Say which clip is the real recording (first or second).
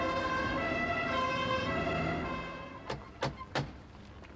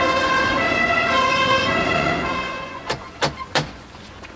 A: first